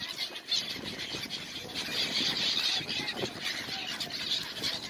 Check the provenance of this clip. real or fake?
real